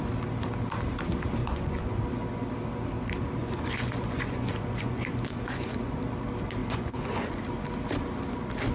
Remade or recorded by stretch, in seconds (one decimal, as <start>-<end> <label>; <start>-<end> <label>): 0.0-1.4 recorded; 1.4-2.0 remade; 2.0-3.4 recorded; 3.4-6.0 remade; 6.0-6.6 recorded; 6.6-7.4 remade; 7.4-8.7 recorded